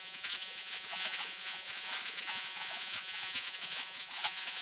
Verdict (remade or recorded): remade